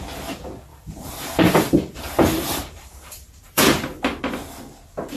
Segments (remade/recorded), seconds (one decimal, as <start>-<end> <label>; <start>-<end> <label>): 0.0-0.7 recorded; 0.7-3.8 remade; 3.8-5.2 recorded